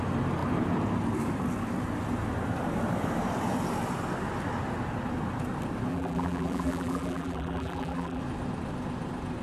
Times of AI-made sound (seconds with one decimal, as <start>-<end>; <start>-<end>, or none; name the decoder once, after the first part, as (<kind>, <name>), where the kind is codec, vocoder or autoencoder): 5.9-8.2 (vocoder, BigVGAN v2)